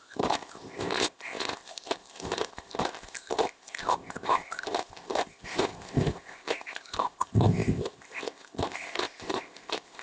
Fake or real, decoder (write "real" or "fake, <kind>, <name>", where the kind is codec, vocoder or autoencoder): fake, codec, ZipCodec